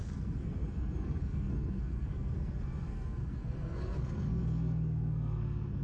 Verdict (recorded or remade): remade